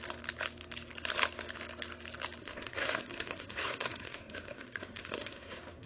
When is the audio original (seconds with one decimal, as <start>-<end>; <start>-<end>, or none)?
0.0-2.4